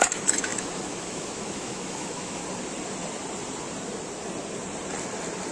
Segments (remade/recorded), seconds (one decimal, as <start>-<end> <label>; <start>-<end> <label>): 0.0-2.4 remade; 2.4-5.5 recorded